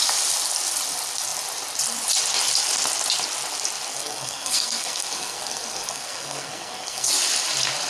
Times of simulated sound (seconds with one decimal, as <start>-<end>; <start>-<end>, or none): 3.9-7.1